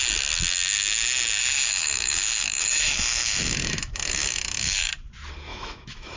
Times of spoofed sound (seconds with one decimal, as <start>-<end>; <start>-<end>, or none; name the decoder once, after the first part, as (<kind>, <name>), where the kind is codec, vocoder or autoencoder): 1.4-4.9 (autoencoder, DAC-VAE); 5.5-6.2